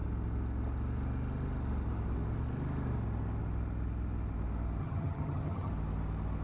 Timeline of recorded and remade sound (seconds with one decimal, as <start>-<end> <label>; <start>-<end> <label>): 0.0-4.8 recorded; 4.8-5.7 remade; 5.7-6.4 recorded